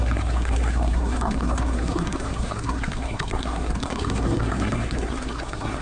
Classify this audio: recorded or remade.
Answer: remade